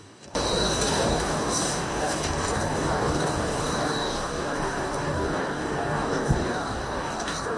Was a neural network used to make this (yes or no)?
yes